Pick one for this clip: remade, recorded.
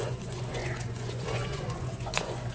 remade